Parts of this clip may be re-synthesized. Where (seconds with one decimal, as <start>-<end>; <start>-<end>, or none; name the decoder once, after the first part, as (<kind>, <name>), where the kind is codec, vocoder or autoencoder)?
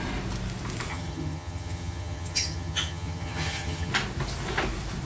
0.9-3.9 (vocoder, HiFi-GAN)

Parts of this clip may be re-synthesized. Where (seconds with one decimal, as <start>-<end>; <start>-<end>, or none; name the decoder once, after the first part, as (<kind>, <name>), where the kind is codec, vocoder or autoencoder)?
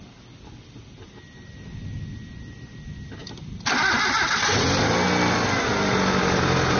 none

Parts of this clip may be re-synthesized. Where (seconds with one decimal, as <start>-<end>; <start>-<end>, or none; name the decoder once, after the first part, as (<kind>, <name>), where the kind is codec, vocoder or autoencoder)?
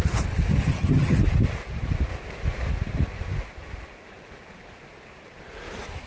0.6-1.2 (vocoder, HiFi-GAN)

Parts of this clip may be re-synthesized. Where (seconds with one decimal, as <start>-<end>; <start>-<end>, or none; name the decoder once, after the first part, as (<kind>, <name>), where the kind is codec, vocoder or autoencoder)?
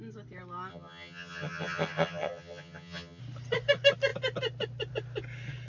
0.7-3.2 (vocoder, HiFi-GAN)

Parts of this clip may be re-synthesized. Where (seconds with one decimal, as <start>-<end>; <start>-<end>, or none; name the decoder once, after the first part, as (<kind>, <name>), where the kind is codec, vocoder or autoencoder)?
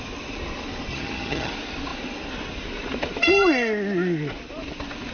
0.9-1.5 (vocoder, HiFi-GAN)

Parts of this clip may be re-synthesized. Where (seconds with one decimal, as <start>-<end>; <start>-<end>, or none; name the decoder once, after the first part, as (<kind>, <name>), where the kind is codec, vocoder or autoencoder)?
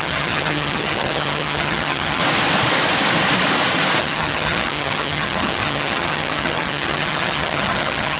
0.0-2.2 (vocoder, HiFi-GAN); 4.0-8.2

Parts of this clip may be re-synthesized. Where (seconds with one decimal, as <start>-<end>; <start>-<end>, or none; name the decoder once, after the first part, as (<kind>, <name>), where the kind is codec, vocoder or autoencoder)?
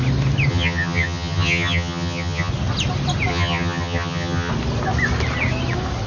0.5-2.5 (vocoder, HiFi-GAN); 3.3-4.5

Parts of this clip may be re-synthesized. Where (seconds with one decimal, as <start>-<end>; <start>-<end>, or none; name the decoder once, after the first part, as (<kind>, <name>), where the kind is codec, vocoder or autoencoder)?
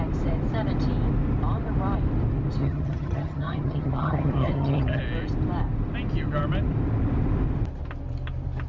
2.6-5.0 (vocoder, HiFi-GAN)